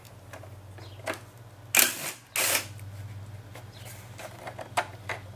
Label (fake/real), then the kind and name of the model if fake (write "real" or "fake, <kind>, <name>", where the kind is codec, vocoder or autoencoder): real